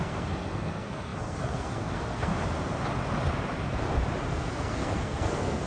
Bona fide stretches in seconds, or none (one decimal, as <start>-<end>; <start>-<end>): 2.3-4.2